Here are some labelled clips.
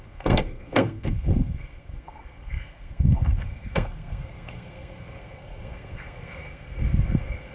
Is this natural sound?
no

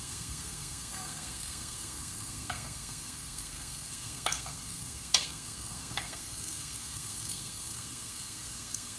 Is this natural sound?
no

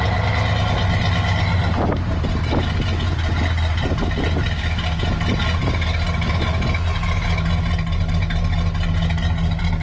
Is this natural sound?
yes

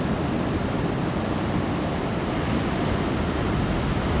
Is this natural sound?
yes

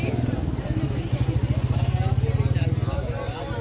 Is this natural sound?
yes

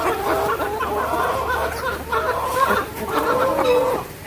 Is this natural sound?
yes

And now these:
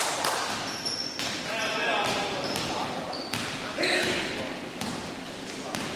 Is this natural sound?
yes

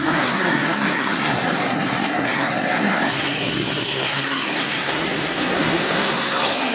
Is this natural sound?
no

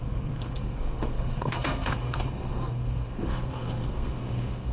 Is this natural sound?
no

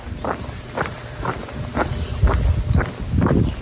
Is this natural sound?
yes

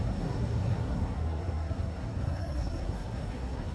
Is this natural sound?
no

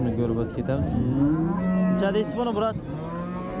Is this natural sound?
yes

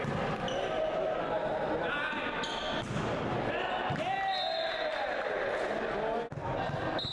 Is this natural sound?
yes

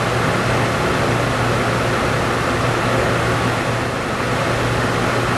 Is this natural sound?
yes